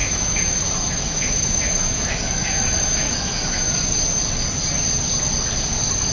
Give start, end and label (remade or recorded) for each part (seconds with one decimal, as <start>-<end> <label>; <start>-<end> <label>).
0.0-3.7 remade; 3.7-6.1 recorded